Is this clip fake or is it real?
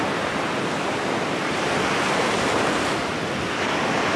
fake